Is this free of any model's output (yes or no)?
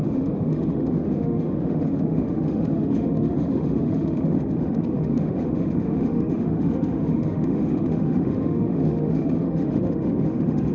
no